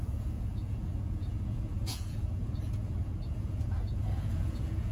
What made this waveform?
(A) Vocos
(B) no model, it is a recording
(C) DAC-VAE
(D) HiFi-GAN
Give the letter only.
A